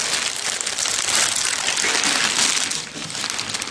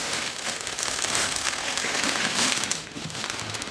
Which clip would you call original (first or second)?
first